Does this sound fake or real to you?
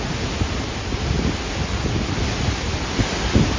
real